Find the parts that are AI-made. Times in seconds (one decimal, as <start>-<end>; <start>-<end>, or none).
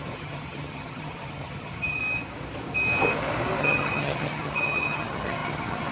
0.0-2.0; 3.6-5.9